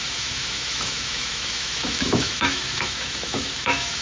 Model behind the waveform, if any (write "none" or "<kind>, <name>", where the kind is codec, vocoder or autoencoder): autoencoder, DAC-VAE